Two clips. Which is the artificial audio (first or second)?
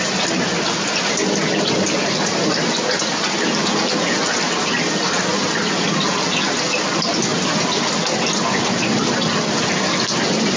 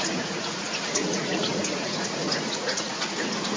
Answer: second